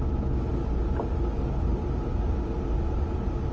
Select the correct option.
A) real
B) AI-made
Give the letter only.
A